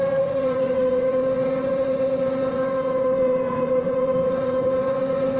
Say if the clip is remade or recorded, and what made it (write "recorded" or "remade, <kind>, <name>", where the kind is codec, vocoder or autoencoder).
remade, vocoder, Vocos